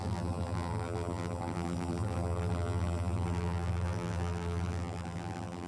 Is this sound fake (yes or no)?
yes